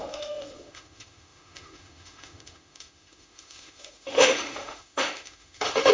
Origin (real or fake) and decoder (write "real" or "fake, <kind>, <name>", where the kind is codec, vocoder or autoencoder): fake, autoencoder, DAC-VAE